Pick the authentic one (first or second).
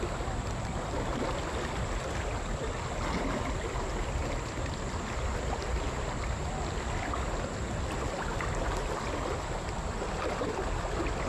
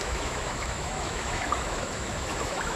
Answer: first